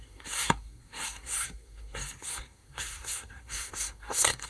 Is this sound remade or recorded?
remade